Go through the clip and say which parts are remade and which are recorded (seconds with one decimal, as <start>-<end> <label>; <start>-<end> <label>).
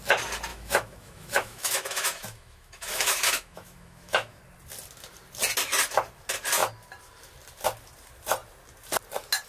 0.0-0.5 recorded; 0.5-4.4 remade; 4.4-9.5 recorded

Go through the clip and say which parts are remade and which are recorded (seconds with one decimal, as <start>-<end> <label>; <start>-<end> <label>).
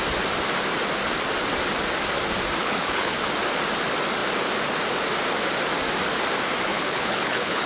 0.0-2.6 recorded; 2.6-3.2 remade; 3.2-6.7 recorded; 6.7-7.7 remade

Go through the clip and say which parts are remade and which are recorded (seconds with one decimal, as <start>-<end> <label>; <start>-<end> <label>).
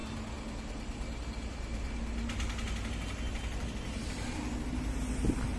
0.0-5.6 recorded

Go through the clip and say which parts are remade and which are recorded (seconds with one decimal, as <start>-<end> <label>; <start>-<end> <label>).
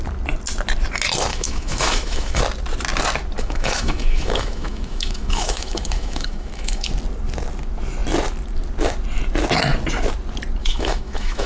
0.0-1.3 recorded; 1.3-2.4 remade; 2.4-3.4 recorded; 3.4-6.9 remade; 6.9-10.6 recorded; 10.6-11.5 remade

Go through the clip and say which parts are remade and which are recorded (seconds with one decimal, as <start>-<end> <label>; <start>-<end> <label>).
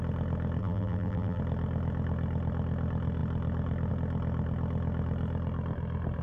0.0-0.6 recorded; 0.6-1.4 remade; 1.4-6.2 recorded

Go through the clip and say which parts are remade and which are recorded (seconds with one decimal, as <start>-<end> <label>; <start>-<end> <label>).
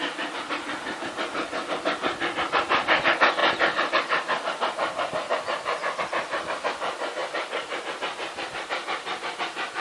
0.0-7.2 recorded; 7.2-7.8 remade; 7.8-9.8 recorded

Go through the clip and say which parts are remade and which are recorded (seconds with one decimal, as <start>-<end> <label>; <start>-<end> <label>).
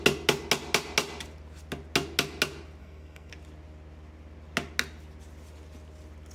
0.0-2.8 recorded; 2.8-3.3 remade; 3.3-6.3 recorded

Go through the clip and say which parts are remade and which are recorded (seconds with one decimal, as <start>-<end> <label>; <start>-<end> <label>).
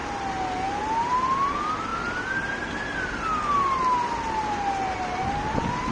0.0-5.9 recorded